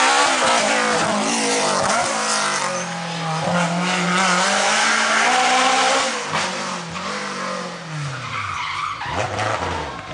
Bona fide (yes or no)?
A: yes